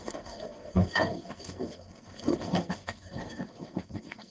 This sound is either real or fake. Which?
fake